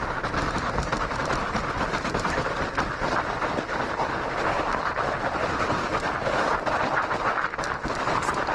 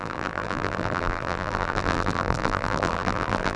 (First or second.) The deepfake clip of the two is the second